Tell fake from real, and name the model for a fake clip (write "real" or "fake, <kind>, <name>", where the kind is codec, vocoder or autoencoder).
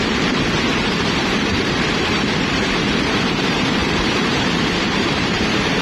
fake, vocoder, BigVGAN v2